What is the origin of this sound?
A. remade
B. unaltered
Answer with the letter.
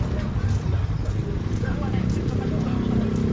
B